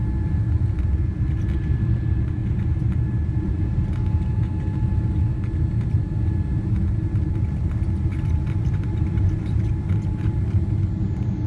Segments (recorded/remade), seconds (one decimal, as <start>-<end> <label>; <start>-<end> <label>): 0.0-8.1 recorded; 8.1-9.7 remade; 9.7-11.5 recorded